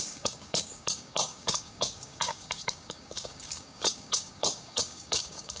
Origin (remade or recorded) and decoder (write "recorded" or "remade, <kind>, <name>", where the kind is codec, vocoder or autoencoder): remade, codec, DAC